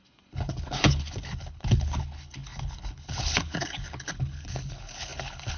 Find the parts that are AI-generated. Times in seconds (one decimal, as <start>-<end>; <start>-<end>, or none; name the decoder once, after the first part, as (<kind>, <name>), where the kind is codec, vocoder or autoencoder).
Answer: 0.0-5.6 (codec, HILCodec)